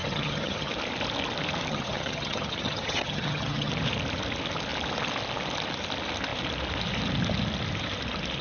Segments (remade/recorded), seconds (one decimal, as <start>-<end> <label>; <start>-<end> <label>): 0.0-0.7 remade; 0.7-1.7 recorded; 1.7-3.7 remade; 3.7-8.4 recorded